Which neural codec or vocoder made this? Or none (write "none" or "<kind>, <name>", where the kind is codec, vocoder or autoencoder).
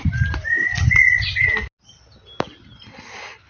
none